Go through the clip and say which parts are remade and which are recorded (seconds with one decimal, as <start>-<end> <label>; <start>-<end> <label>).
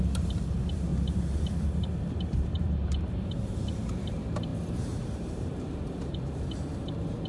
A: 0.0-0.9 remade; 0.9-2.5 recorded; 2.5-7.3 remade